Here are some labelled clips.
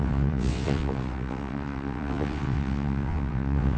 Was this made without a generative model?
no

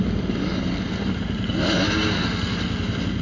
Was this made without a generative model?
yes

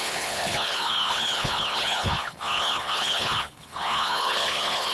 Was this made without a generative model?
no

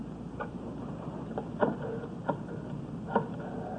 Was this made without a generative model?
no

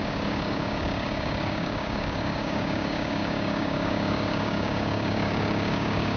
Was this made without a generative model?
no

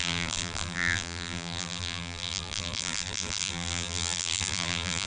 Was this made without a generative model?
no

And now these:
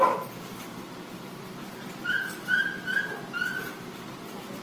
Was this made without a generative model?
no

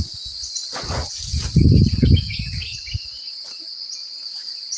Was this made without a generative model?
yes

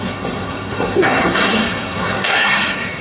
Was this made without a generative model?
no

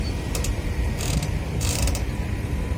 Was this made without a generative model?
no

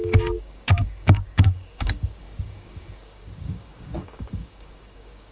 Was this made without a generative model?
no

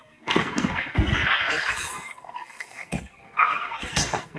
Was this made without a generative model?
no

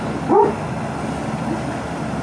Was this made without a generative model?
yes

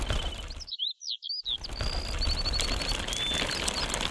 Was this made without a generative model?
yes